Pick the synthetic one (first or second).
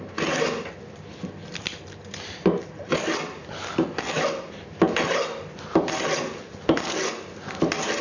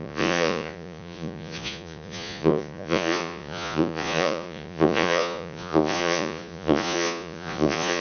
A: second